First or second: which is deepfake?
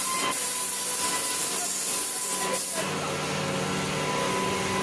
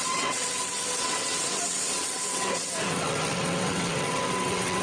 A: second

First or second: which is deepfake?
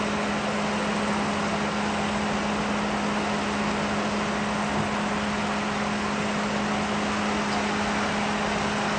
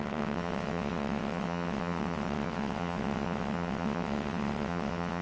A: second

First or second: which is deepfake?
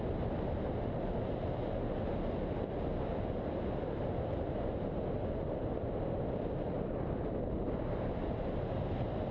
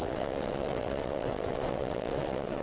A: second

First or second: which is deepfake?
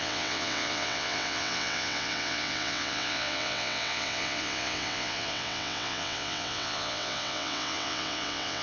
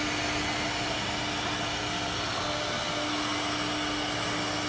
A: first